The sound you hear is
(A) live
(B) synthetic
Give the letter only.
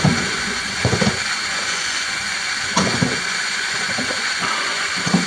B